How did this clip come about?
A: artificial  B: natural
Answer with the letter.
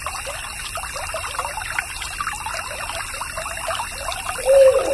B